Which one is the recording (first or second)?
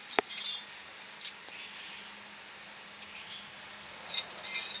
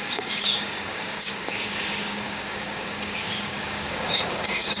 first